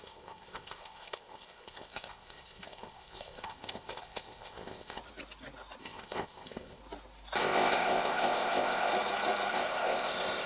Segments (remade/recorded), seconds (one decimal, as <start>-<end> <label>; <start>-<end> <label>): 0.0-5.0 remade; 5.0-5.8 recorded; 5.8-6.8 remade; 6.8-7.4 recorded; 7.4-8.9 remade; 8.9-9.5 recorded; 9.5-10.5 remade